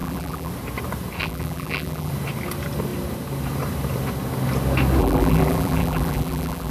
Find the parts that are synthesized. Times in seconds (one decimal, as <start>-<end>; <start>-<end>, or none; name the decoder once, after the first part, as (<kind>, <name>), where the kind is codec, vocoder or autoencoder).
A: 0.0-0.5 (vocoder, BigVGAN v2); 1.2-2.1; 5.0-6.7